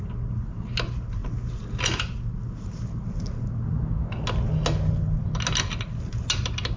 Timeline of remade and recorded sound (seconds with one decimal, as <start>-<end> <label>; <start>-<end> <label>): 0.0-6.8 recorded